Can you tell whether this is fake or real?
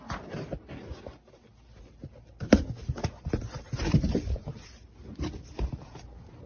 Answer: real